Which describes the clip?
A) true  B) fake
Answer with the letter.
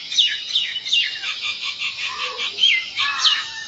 B